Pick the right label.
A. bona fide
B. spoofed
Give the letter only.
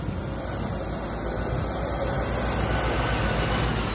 A